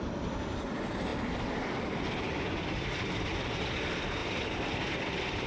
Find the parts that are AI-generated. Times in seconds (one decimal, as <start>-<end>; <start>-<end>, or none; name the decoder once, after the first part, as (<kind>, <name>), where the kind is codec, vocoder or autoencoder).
none